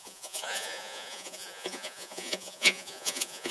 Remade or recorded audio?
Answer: remade